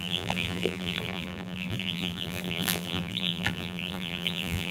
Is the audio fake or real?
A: fake